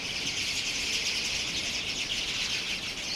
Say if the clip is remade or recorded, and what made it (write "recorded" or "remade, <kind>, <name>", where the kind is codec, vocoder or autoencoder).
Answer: recorded